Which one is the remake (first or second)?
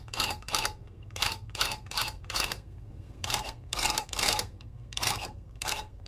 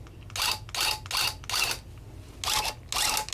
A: first